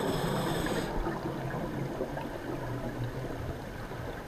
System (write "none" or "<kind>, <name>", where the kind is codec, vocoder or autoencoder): none